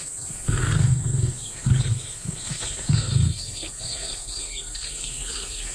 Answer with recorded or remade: remade